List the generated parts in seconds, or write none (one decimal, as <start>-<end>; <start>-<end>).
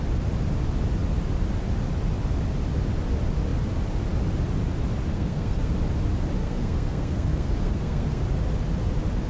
5.1-5.7; 6.4-8.2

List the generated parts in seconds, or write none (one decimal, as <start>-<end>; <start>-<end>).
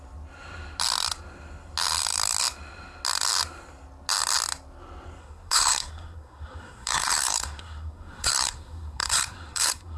5.2-10.0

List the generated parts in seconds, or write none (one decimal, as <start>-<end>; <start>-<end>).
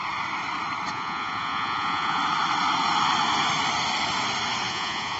0.9-2.2; 4.7-5.2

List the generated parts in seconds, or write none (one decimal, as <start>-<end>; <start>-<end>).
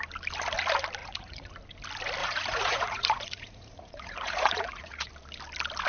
1.0-1.5; 2.2-5.1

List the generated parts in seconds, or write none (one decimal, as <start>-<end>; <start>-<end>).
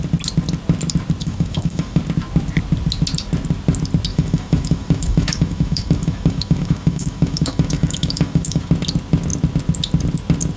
1.2-2.0; 4.1-8.7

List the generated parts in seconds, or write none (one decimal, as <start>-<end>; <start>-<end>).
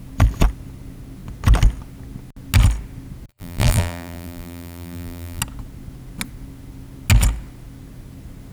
3.3-5.4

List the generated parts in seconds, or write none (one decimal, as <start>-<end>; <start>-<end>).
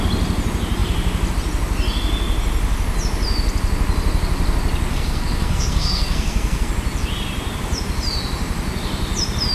4.9-6.7